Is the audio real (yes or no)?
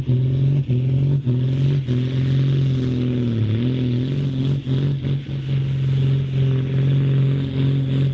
yes